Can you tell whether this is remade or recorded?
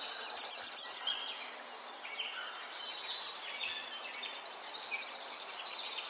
recorded